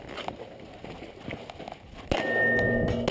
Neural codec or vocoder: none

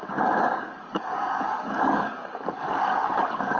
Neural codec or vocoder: codec, DAC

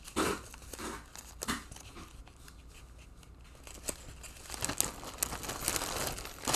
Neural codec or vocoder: none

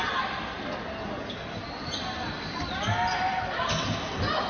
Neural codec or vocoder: none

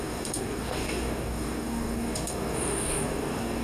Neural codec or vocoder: codec, DAC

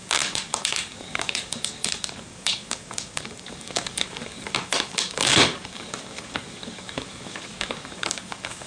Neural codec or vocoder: codec, DAC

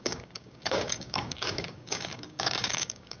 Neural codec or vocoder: codec, DAC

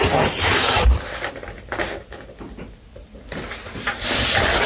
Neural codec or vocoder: none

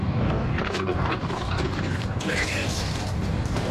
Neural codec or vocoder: codec, DAC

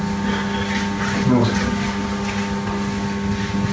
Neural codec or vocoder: none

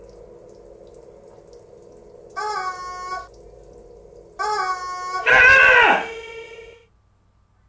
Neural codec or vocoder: none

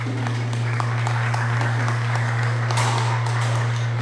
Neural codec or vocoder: codec, DAC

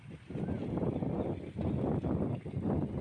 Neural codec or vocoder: none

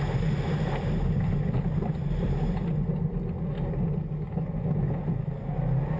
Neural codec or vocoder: none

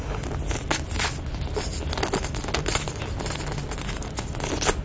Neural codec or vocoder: none